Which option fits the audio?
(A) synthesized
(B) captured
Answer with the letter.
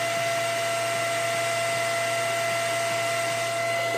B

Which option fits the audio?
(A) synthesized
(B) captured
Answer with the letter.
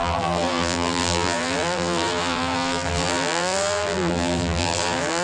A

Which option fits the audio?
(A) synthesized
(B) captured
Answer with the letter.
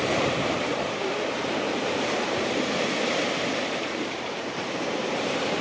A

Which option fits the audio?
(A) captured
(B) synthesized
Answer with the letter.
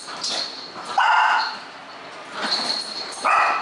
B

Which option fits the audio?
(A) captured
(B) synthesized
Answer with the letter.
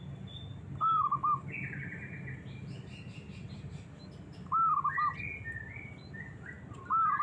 A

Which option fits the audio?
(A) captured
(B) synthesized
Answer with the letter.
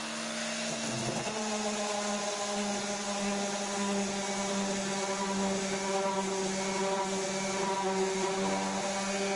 A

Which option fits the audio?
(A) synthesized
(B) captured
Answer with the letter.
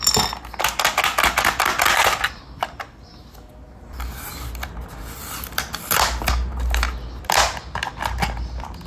B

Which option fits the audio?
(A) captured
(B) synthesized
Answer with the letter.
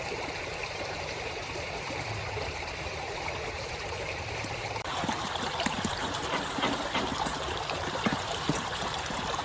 B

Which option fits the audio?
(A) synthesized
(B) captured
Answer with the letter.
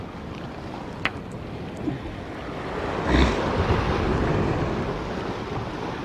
B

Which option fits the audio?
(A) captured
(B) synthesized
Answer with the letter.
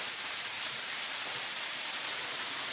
B